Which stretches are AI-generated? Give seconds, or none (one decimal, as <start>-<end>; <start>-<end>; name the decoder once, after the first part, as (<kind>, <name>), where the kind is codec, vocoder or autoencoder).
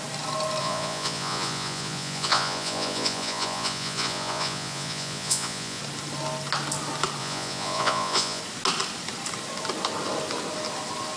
0.6-5.8 (vocoder, Vocos); 7.2-8.4